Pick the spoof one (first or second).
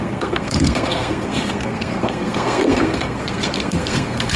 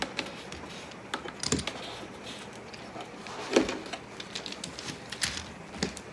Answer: first